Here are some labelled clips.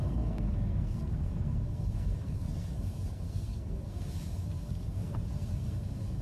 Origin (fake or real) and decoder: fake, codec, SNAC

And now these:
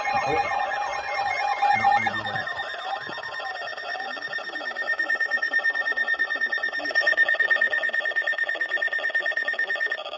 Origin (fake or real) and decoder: fake, vocoder, Vocos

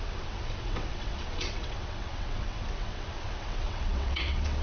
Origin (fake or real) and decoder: fake, vocoder, WaveNeXt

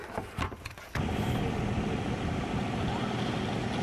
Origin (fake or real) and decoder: real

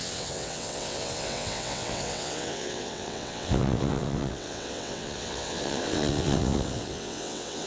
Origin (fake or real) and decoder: fake, vocoder, WaveNeXt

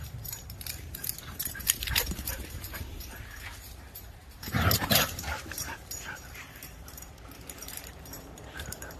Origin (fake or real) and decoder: fake, vocoder, BigVGAN v2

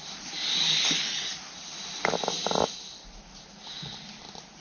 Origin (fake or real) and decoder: real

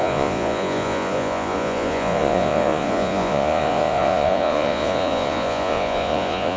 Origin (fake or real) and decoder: fake, vocoder, Vocos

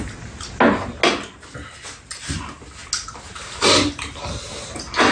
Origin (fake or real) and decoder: real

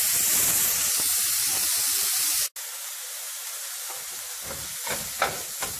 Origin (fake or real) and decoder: real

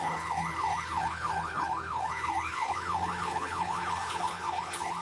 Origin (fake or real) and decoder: fake, codec, HILCodec